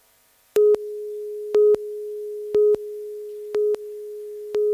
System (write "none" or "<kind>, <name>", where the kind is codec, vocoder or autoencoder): none